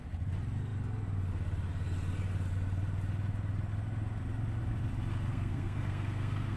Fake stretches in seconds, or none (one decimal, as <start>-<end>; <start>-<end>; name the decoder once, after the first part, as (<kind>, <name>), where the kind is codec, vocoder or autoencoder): 5.3-6.6 (codec, SNAC)

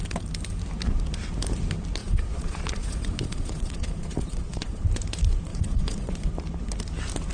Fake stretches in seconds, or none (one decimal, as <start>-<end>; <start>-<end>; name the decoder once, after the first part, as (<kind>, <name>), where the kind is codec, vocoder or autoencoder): 2.0-4.8 (vocoder, Vocos); 5.5-6.3

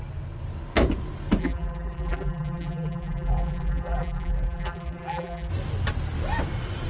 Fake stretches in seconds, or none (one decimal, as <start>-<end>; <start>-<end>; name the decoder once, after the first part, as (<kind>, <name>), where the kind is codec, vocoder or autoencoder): 1.4-5.5 (vocoder, BigVGAN v2)

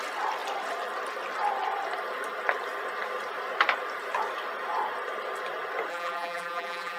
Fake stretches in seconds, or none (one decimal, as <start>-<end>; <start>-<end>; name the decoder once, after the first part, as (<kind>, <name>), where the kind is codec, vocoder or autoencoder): 5.9-7.0 (vocoder, BigVGAN v2)